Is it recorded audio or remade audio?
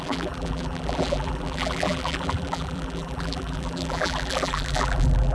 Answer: remade